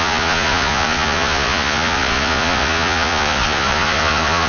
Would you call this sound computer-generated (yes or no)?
yes